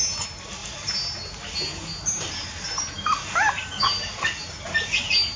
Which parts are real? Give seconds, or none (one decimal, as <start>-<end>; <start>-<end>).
0.0-5.4